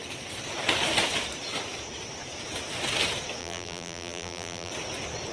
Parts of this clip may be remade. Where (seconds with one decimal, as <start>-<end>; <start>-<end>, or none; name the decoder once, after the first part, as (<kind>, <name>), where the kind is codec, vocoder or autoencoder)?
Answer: 3.4-4.7 (vocoder, BigVGAN v2)